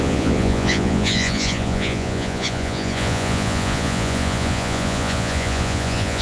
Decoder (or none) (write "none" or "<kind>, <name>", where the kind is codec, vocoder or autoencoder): vocoder, Vocos